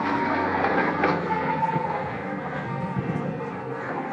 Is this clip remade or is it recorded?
remade